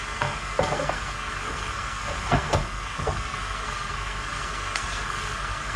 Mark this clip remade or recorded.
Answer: remade